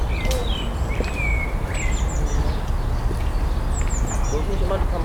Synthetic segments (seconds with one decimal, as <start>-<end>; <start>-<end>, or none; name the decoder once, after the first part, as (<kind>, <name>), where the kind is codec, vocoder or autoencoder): none